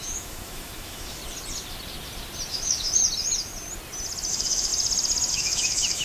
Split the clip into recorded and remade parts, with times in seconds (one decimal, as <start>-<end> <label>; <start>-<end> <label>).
0.0-1.2 remade; 1.2-2.5 recorded; 2.5-3.0 remade; 3.0-4.3 recorded; 4.3-4.7 remade; 4.7-5.3 recorded; 5.3-6.0 remade